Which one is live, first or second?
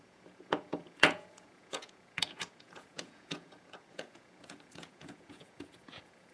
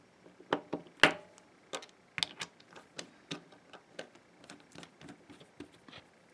second